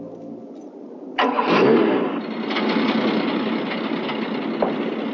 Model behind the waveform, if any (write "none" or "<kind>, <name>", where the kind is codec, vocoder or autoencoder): none